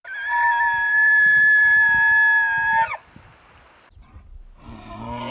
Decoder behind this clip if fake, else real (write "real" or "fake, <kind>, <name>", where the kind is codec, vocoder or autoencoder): real